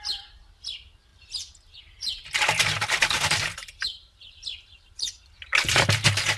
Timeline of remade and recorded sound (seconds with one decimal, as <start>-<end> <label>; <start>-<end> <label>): 0.0-1.1 recorded; 1.1-1.8 remade; 1.8-3.6 recorded; 3.6-4.9 remade; 4.9-6.4 recorded